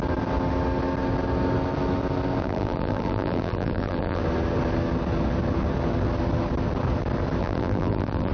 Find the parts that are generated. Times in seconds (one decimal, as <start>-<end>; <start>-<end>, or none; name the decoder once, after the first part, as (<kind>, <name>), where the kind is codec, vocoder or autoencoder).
2.4-4.2 (vocoder, BigVGAN v2); 7.4-8.3